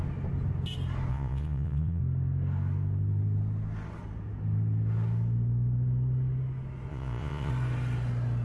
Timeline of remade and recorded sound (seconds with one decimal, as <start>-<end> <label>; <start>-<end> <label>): 0.0-1.1 recorded; 1.1-2.0 remade; 2.0-6.9 recorded; 6.9-7.5 remade; 7.5-8.4 recorded